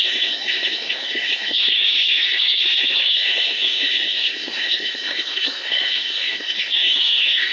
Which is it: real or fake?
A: fake